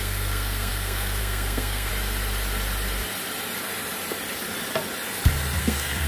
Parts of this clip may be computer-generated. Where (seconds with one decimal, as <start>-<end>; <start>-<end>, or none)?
0.0-1.9; 5.6-6.1